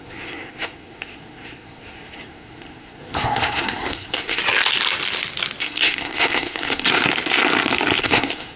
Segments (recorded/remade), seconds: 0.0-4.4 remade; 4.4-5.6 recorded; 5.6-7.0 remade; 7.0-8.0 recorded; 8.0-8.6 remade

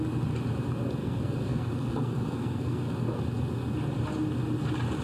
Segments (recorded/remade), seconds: 0.0-1.0 recorded; 1.0-3.2 remade; 3.2-5.0 recorded

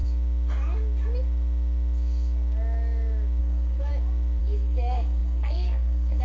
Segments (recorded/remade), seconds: 0.0-3.4 recorded; 3.4-3.9 remade; 3.9-4.4 recorded; 4.4-6.2 remade

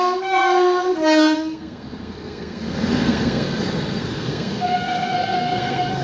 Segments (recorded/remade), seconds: 0.0-6.0 remade

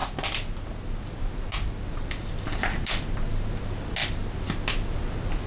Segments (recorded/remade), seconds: 0.0-5.5 recorded